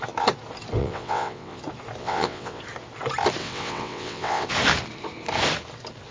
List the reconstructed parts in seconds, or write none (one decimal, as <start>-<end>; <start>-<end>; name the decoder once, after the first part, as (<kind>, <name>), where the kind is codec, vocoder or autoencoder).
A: 0.8-1.6 (vocoder, WaveNeXt); 2.0-2.6; 3.4-4.5

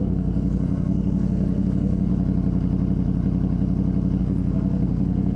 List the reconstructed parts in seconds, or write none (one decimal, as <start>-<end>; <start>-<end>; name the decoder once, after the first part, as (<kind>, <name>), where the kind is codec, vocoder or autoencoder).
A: 0.0-2.1 (codec, SNAC); 4.2-5.4

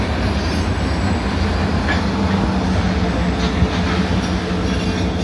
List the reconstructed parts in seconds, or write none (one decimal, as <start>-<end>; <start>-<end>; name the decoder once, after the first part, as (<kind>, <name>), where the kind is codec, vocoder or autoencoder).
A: none

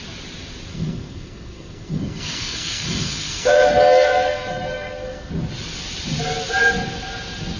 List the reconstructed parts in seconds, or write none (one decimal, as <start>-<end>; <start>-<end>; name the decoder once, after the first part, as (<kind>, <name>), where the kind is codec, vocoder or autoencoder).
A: 0.7-5.3 (codec, SNAC)

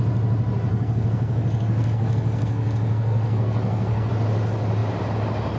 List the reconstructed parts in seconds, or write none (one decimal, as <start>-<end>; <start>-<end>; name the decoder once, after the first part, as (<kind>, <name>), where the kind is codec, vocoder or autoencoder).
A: 0.7-4.1 (codec, SNAC)

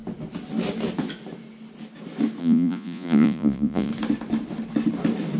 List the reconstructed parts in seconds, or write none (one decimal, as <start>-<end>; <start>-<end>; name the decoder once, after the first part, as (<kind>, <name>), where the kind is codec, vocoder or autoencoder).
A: 2.4-3.9 (vocoder, Vocos)